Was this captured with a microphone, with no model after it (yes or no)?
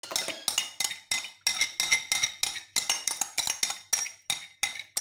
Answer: yes